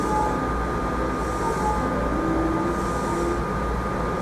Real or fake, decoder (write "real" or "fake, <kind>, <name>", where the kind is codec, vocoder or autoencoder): real